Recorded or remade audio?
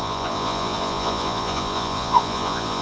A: remade